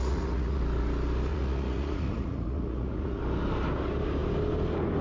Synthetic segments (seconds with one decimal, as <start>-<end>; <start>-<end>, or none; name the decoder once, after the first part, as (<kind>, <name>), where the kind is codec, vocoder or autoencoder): 0.0-0.6 (vocoder, Vocos); 1.3-3.2